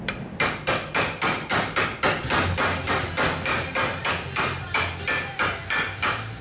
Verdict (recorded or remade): recorded